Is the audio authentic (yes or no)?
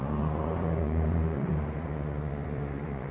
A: no